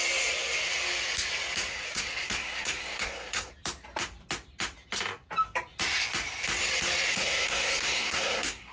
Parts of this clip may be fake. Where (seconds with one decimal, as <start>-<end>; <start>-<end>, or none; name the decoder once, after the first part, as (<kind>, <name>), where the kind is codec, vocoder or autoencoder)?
1.7-3.5 (codec, SNAC); 7.1-8.7